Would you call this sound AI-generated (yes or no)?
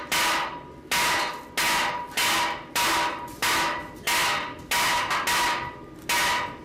no